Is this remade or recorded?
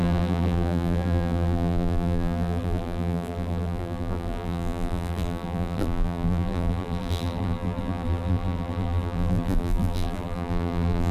remade